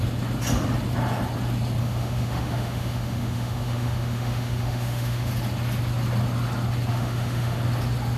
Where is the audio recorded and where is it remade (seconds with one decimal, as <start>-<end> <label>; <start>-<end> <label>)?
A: 0.0-1.8 recorded; 1.8-5.3 remade; 5.3-6.9 recorded; 6.9-7.6 remade; 7.6-8.2 recorded